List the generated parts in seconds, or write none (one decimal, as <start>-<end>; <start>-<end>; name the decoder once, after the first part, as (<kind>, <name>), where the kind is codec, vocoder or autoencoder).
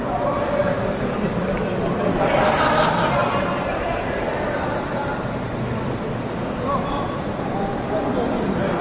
0.6-2.7 (vocoder, BigVGAN v2)